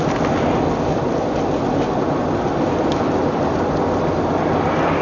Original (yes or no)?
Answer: yes